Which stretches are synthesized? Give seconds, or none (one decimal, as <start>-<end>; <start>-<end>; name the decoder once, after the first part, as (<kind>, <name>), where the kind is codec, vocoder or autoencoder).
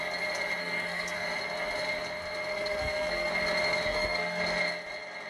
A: 0.6-1.4 (codec, SNAC); 2.5-3.3; 3.9-4.4